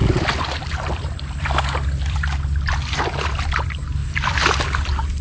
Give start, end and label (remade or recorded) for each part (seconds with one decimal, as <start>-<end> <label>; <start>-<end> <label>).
0.0-2.4 remade; 2.4-4.0 recorded; 4.0-4.6 remade; 4.6-5.2 recorded